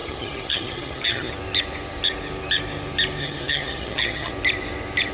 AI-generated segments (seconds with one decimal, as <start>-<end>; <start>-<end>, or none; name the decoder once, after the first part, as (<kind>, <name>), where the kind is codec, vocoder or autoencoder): 0.0-1.3 (vocoder, HiFi-GAN); 3.2-4.3